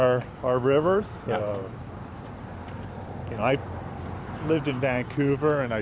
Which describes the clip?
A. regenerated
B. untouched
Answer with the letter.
A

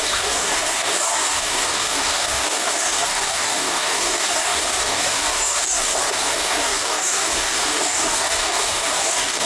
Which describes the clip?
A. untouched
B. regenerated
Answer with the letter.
B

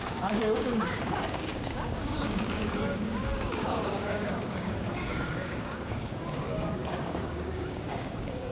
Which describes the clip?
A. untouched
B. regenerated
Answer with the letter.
B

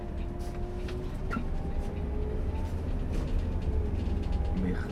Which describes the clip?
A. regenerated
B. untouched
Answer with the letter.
B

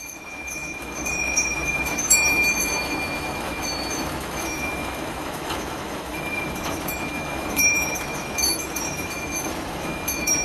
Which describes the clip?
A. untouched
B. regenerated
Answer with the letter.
B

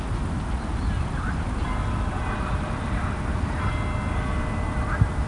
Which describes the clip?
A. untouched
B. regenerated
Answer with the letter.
A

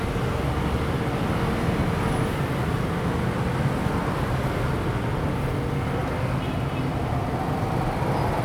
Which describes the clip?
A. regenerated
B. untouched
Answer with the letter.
B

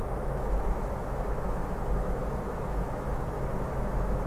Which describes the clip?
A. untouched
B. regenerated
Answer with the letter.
B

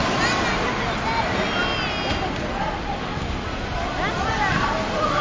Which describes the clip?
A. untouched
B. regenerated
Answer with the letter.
A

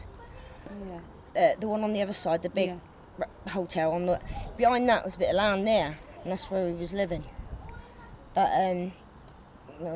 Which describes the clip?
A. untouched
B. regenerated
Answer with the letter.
A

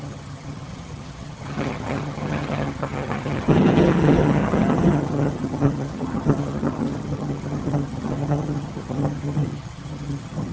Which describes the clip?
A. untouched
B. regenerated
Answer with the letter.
B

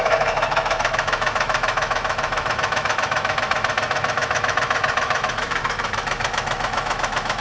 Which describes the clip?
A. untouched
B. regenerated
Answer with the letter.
B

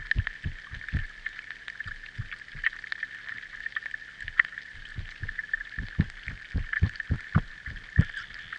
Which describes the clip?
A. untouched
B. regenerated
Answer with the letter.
A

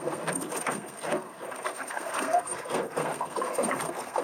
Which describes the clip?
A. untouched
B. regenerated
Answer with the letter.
B